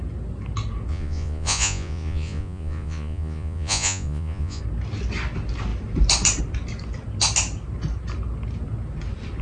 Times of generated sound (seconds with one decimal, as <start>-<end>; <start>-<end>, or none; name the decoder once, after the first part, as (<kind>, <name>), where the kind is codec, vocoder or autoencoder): 0.9-4.6 (vocoder, Vocos)